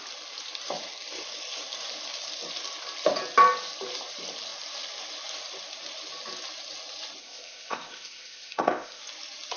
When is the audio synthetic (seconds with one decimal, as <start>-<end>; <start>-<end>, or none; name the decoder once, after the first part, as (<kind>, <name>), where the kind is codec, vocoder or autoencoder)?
7.2-9.0 (codec, ZipCodec)